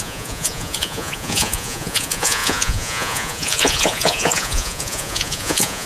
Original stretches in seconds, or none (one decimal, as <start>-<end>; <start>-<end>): none

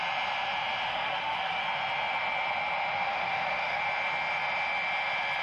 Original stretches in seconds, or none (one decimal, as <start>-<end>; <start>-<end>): 0.0-0.9; 1.6-3.1; 3.8-5.4

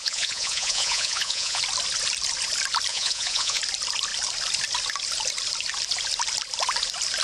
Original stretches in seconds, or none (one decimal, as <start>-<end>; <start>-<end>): 1.6-2.9; 3.6-7.2

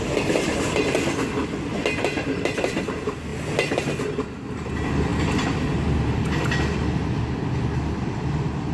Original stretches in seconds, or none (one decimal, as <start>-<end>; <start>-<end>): 0.0-8.7